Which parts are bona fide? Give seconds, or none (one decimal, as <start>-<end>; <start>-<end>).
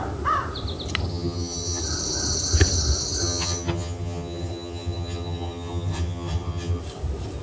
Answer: 0.0-1.1; 1.8-3.2; 6.8-7.4